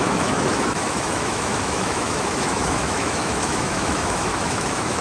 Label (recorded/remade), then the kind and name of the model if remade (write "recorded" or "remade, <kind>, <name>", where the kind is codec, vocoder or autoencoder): remade, autoencoder, DAC-VAE